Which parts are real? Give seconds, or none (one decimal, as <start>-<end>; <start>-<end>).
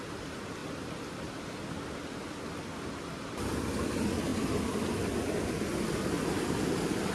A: 0.0-7.1